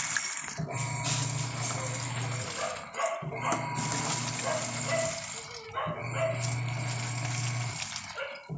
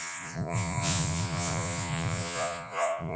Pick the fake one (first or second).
second